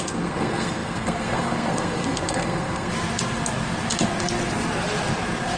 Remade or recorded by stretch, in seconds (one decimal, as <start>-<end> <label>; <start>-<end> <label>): 0.0-2.9 remade; 2.9-5.6 recorded